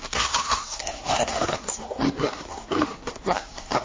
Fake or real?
fake